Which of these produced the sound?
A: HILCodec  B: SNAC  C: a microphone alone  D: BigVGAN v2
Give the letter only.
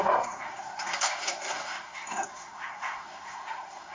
B